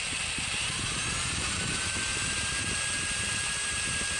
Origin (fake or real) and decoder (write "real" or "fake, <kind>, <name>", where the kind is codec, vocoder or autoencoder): fake, vocoder, BigVGAN v2